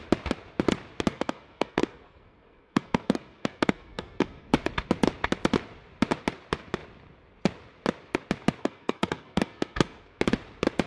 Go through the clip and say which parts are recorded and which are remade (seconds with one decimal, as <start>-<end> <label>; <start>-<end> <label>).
0.0-1.1 recorded; 1.1-4.5 remade; 4.5-8.6 recorded; 8.6-10.2 remade; 10.2-10.9 recorded